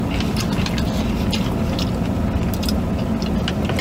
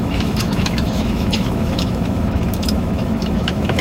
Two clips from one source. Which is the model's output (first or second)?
second